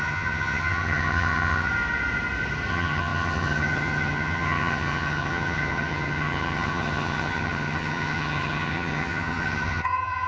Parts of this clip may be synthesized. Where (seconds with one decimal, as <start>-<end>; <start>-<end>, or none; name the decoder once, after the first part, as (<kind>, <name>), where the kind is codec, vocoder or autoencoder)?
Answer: 0.0-1.7 (vocoder, HiFi-GAN); 2.7-10.3